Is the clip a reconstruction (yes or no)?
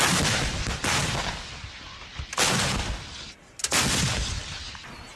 no